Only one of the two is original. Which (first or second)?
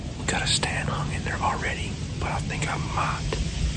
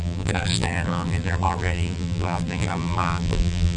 first